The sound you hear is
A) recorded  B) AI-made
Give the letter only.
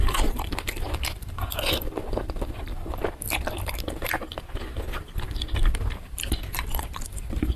B